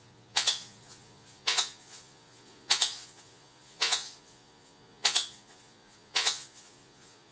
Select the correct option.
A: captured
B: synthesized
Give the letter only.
B